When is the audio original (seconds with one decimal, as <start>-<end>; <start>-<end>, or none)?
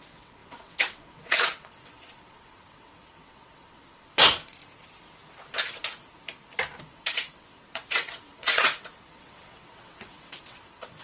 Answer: 4.6-6.8